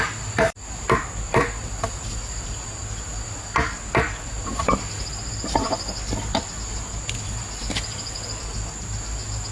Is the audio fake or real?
real